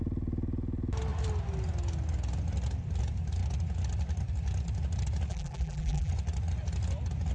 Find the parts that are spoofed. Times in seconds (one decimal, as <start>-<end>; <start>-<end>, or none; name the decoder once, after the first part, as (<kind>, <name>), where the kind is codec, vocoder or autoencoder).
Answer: 5.3-6.1 (vocoder, BigVGAN v2)